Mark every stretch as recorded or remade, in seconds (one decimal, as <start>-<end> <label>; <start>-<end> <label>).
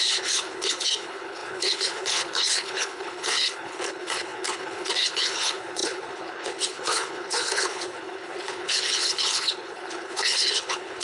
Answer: 0.0-11.0 remade